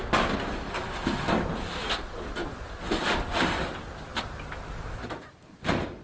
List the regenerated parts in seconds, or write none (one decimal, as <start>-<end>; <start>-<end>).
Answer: 2.4-4.1